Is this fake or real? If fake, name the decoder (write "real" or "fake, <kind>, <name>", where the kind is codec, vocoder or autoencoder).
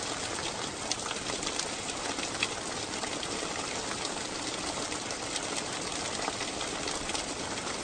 real